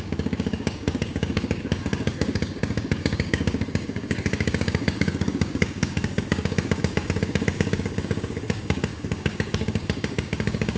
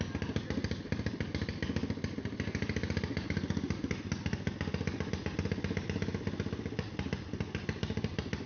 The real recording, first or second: second